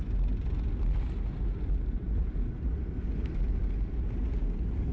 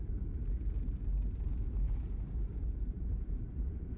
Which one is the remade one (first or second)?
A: second